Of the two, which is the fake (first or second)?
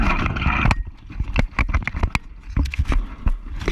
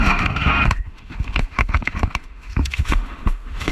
second